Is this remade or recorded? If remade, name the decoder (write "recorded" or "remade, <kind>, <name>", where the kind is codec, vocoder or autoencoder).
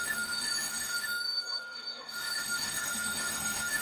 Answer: remade, autoencoder, DAC-VAE